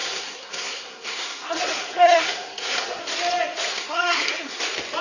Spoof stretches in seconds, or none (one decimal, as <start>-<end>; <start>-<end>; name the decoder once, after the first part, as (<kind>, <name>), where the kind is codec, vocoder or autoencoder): 0.0-3.0 (codec, SNAC); 3.7-4.6